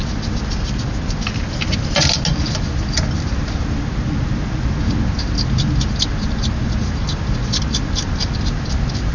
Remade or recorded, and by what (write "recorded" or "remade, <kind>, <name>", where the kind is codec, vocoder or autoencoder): recorded